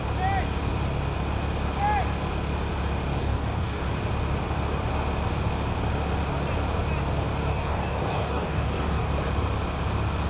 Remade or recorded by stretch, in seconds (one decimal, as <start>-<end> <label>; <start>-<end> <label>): 0.0-3.2 recorded; 3.2-3.8 remade; 3.8-7.5 recorded; 7.5-9.1 remade; 9.1-10.3 recorded